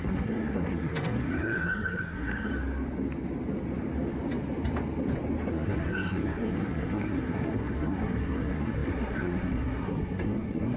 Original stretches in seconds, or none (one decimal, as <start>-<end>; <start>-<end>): 2.5-5.5